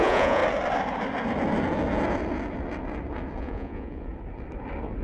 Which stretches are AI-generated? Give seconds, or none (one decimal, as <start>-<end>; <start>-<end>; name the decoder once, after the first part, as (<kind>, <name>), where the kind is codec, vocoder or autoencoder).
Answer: 0.0-0.4 (vocoder, Vocos); 3.4-4.1